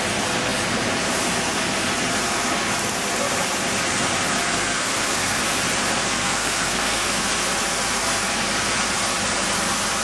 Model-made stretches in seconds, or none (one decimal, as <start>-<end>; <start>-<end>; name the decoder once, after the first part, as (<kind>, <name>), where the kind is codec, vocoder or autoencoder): 4.5-5.4 (codec, SNAC); 6.1-7.2